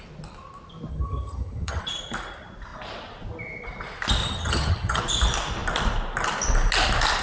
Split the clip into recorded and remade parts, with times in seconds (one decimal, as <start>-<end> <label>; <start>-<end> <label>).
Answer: 0.0-0.9 recorded; 0.9-1.8 remade; 1.8-4.2 recorded; 4.2-5.0 remade; 5.0-7.2 recorded